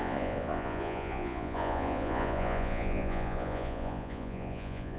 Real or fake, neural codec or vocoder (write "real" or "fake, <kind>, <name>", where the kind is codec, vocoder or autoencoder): fake, vocoder, Vocos